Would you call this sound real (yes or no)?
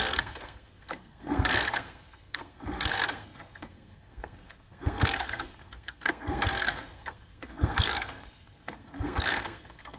no